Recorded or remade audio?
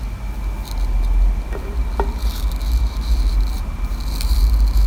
recorded